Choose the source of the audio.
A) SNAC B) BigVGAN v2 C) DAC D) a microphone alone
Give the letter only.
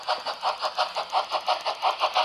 D